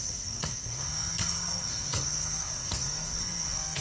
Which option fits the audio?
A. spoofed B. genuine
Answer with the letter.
A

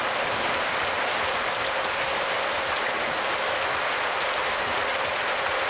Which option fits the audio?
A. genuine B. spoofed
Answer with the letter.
A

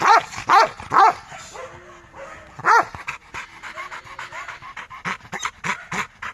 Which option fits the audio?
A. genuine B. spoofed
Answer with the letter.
A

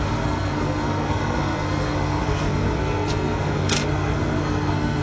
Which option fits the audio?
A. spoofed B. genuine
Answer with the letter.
A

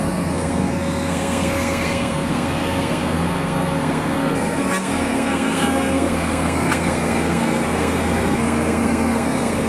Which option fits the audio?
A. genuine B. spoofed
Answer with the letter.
B